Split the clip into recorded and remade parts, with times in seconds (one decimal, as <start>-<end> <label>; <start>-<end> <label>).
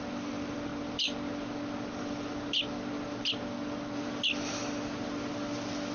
0.0-5.9 recorded